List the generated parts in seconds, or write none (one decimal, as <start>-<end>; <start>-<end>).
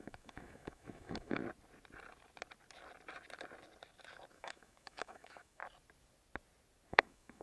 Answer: 0.0-1.4; 4.3-5.6; 6.9-7.4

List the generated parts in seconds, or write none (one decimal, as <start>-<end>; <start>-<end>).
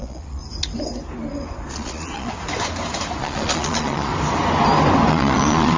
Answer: 0.0-0.4; 1.7-2.3; 3.2-4.1; 5.1-5.8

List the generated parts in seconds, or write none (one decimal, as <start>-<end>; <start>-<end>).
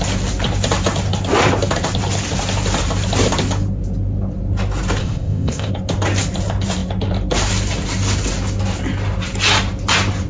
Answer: 5.0-5.7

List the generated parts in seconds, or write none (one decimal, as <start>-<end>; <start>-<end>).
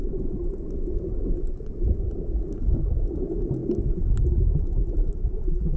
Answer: 0.0-3.2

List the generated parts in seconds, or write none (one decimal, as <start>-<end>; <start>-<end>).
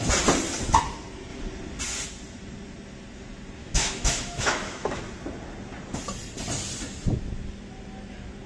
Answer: 3.6-5.0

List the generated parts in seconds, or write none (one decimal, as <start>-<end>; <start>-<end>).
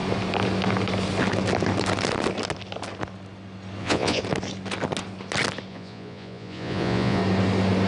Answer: 3.8-4.2; 5.7-7.2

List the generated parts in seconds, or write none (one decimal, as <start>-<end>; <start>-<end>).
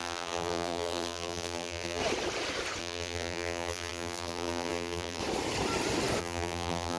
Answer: 0.0-2.0; 2.8-5.2; 6.2-7.0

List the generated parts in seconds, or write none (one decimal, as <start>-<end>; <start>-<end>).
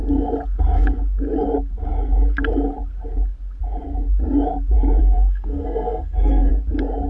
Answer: 5.0-6.5